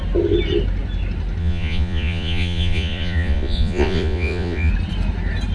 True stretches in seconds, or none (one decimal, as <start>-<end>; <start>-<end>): 0.0-1.4; 4.7-5.5